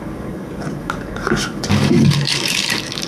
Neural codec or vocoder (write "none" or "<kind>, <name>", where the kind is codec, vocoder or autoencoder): codec, DAC